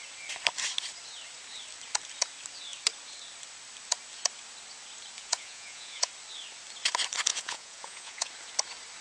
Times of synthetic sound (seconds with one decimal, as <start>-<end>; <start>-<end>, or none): 5.2-6.1; 7.3-8.3